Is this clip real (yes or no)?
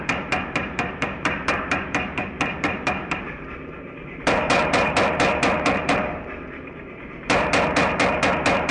no